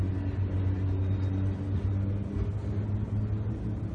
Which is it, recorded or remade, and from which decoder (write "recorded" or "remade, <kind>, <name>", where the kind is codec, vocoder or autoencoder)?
recorded